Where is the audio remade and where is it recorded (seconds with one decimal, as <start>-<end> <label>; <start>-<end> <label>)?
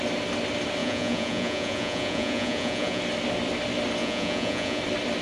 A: 0.0-0.8 recorded; 0.8-3.0 remade; 3.0-4.0 recorded; 4.0-4.8 remade; 4.8-5.2 recorded